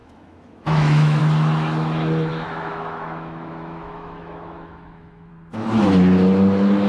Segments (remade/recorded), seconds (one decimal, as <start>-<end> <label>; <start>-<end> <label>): 0.0-1.2 remade; 1.2-2.3 recorded; 2.3-5.3 remade; 5.3-6.9 recorded